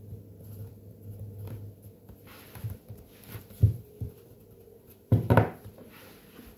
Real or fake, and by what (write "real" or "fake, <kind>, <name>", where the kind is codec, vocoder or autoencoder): real